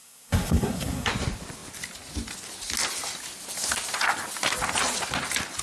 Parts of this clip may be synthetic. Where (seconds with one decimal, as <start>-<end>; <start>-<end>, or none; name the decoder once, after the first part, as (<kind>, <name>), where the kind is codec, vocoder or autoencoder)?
0.0-1.1 (codec, SNAC)